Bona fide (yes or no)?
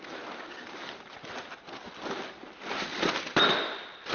no